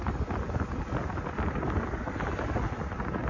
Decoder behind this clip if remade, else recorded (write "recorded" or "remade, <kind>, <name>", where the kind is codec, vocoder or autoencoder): recorded